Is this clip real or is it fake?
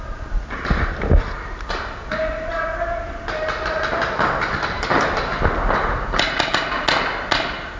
real